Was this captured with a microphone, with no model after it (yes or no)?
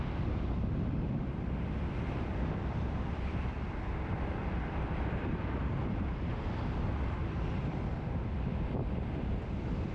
no